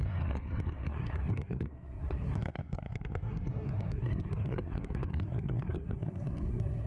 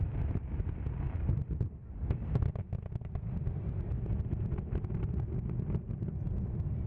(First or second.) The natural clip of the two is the second